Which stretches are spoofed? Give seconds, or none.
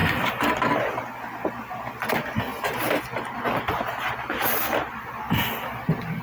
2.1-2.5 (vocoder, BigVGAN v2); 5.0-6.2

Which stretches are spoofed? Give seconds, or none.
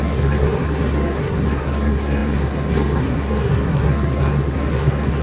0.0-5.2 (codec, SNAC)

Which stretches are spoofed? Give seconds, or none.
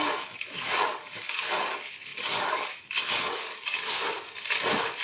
0.0-4.0 (codec, DAC)